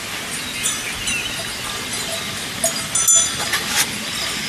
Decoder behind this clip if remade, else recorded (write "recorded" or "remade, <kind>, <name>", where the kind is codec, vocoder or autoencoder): recorded